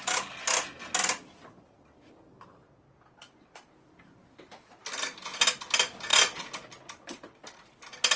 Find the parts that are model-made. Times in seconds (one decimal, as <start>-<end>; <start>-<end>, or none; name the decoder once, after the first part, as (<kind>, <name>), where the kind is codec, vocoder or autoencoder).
none